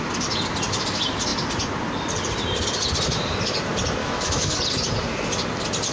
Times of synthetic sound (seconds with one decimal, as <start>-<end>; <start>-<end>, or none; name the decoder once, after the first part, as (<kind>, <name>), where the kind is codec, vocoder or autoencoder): 4.0-4.6 (autoencoder, DAC-VAE)